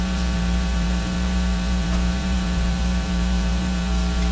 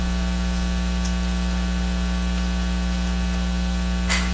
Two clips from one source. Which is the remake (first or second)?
first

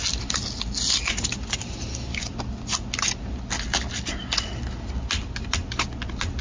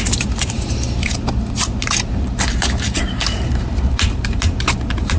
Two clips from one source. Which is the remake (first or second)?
second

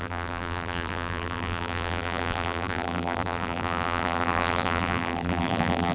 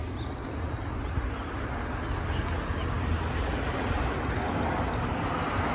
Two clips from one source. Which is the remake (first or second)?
first